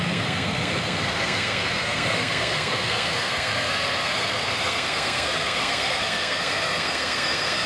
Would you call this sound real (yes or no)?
no